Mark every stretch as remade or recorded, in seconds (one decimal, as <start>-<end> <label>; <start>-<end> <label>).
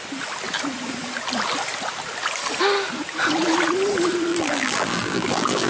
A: 0.0-4.3 recorded; 4.3-5.7 remade